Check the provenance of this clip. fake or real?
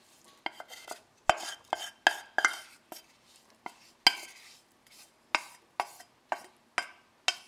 real